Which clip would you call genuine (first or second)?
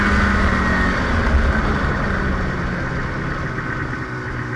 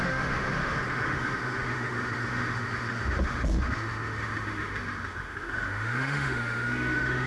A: first